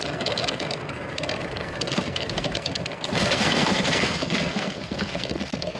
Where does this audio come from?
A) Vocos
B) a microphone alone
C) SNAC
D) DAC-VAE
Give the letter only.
C